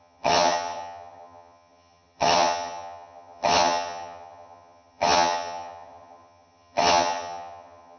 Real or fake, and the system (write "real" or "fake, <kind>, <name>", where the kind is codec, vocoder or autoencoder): fake, vocoder, HiFi-GAN